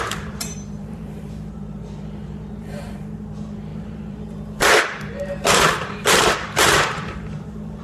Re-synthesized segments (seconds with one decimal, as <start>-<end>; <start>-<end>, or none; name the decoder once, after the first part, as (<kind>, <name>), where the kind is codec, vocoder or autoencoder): 0.0-7.8 (vocoder, BigVGAN v2)